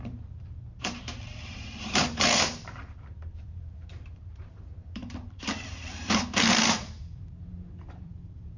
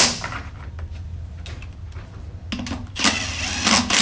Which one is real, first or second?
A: second